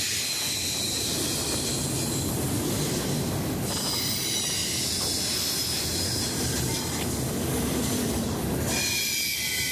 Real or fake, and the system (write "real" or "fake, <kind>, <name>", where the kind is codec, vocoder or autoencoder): real